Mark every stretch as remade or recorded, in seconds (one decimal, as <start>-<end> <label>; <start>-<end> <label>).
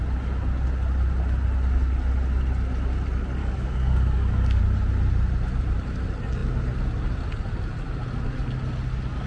0.0-3.4 recorded; 3.4-4.6 remade; 4.6-9.3 recorded